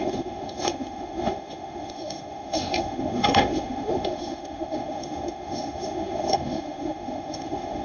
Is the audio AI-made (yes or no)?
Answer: yes